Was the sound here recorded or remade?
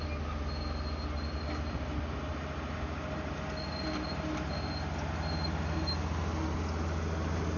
recorded